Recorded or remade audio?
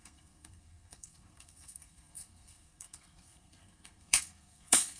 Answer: remade